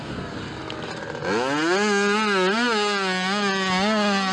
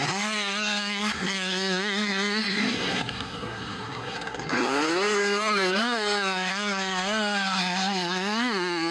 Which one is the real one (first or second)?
first